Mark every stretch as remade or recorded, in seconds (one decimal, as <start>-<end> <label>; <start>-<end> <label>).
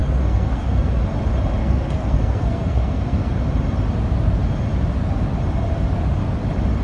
0.0-1.0 remade; 1.0-1.6 recorded; 1.6-3.4 remade; 3.4-6.8 recorded